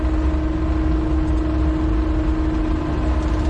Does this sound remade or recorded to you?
recorded